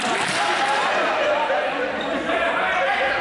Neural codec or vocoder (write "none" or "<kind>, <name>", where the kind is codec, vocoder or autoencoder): none